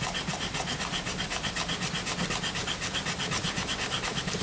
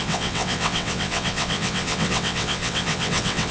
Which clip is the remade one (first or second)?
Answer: second